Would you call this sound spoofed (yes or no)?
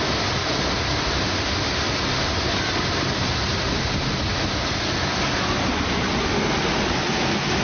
no